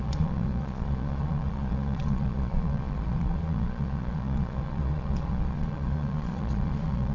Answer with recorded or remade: remade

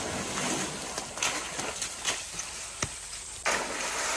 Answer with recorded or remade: recorded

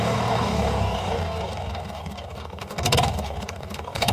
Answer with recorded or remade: remade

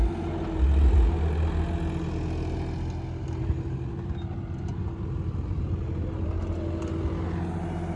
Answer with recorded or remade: recorded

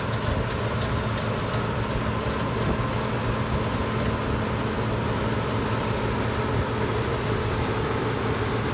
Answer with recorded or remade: recorded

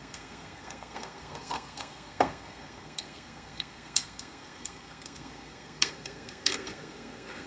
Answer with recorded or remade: remade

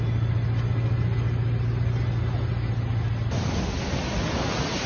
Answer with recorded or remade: recorded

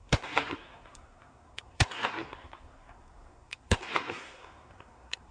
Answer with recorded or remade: remade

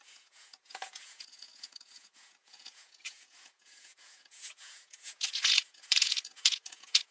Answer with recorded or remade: remade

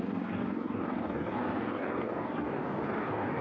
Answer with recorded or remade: remade